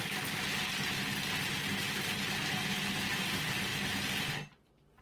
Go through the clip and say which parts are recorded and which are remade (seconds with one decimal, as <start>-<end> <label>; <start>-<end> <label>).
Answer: 0.0-5.0 recorded